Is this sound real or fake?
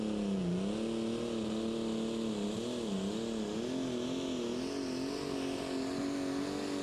real